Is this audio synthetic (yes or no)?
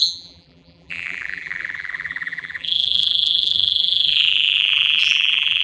yes